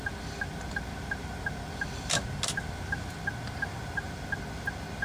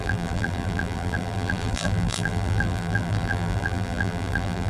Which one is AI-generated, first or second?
second